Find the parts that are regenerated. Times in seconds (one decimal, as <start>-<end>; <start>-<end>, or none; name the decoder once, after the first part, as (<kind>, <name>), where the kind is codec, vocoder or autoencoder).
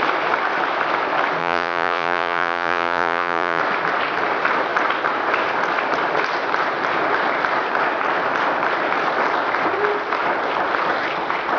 1.4-3.6 (vocoder, Vocos)